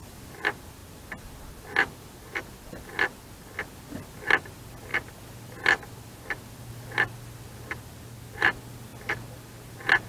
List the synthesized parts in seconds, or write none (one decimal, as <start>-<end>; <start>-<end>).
none